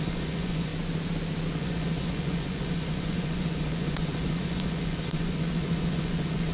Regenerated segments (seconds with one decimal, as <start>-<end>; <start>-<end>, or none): 0.0-0.7; 1.5-6.5